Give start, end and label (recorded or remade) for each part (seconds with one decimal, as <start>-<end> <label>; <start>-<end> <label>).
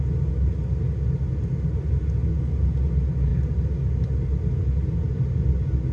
0.0-5.9 recorded